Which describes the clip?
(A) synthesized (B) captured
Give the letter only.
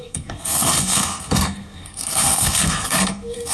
A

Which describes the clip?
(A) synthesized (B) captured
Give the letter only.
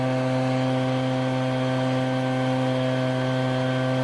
B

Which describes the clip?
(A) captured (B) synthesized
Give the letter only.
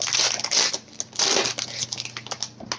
A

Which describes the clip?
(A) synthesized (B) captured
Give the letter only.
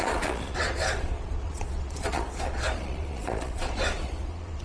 A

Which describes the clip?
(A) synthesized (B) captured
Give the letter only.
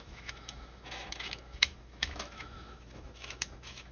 A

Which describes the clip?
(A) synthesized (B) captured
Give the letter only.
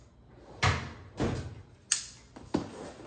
B